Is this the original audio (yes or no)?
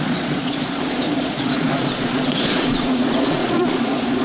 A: no